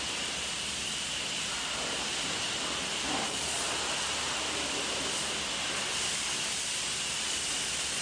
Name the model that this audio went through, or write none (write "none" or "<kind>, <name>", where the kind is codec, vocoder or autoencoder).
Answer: none